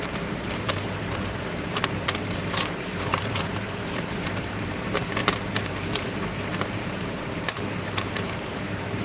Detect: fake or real fake